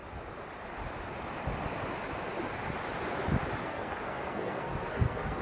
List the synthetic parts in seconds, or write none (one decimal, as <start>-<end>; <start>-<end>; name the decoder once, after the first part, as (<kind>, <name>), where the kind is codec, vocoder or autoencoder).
3.6-5.4 (codec, SNAC)